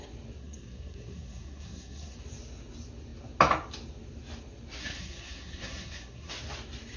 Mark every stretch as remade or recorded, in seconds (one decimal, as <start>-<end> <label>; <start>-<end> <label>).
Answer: 0.0-0.4 recorded; 0.4-2.2 remade; 2.2-4.8 recorded; 4.8-6.3 remade; 6.3-7.0 recorded